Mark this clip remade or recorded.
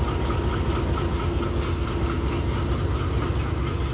recorded